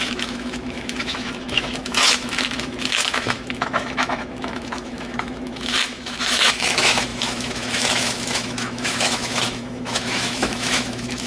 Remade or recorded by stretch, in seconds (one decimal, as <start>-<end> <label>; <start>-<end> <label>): 0.0-11.3 remade